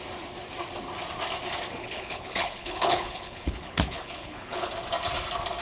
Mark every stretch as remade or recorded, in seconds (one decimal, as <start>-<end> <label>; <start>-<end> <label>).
0.0-1.8 recorded; 1.8-4.7 remade; 4.7-5.6 recorded